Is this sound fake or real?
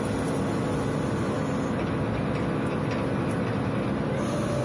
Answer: real